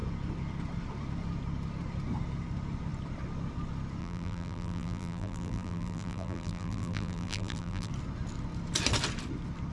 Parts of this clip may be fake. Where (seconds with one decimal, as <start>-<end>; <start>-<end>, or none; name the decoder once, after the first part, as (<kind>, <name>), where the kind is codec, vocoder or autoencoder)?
4.0-7.9 (vocoder, BigVGAN v2)